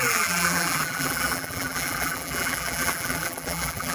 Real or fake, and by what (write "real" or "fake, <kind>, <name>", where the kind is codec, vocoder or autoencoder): fake, vocoder, BigVGAN v2